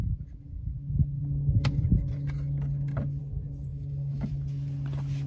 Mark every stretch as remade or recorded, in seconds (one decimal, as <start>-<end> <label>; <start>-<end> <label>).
0.0-3.7 recorded; 3.7-4.3 remade; 4.3-5.3 recorded